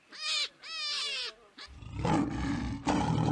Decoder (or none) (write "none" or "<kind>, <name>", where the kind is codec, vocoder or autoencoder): none